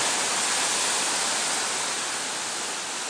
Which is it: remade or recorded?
recorded